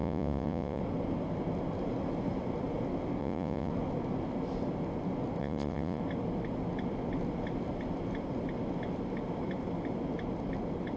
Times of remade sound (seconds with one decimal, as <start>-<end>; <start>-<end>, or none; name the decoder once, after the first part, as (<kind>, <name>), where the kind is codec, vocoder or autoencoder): 0.0-0.8 (vocoder, Vocos); 3.2-3.7; 5.4-6.0